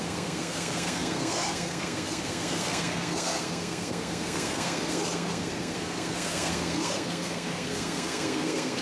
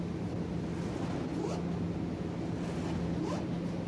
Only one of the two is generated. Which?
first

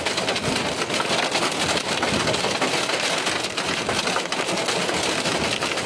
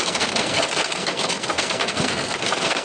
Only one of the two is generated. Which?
second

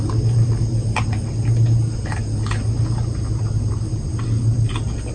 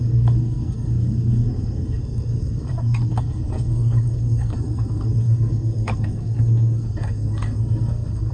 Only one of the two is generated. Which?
second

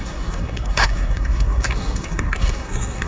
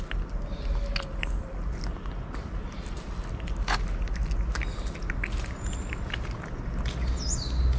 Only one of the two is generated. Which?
first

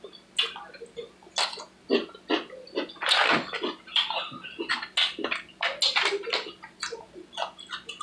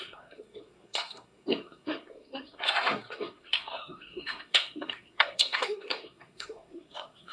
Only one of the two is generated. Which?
second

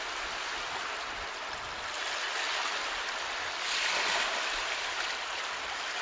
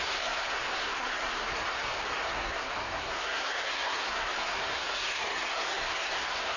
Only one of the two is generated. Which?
second